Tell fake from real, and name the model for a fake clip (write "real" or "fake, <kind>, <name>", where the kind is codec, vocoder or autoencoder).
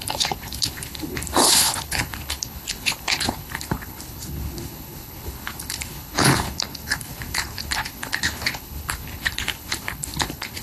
fake, codec, HILCodec